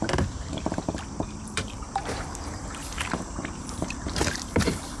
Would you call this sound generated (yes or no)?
yes